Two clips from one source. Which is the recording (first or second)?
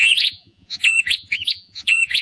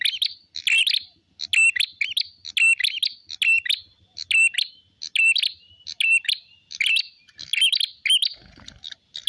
second